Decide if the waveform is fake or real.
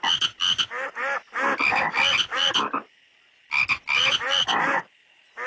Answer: real